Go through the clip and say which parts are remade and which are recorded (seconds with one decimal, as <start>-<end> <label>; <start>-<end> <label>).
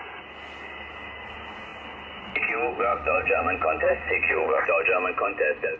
0.0-2.9 recorded; 2.9-4.6 remade; 4.6-5.8 recorded